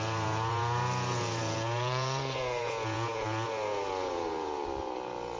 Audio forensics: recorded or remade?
remade